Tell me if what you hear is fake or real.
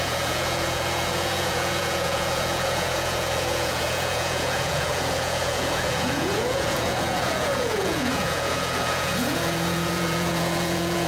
fake